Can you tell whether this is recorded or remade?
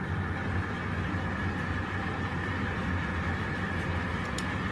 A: recorded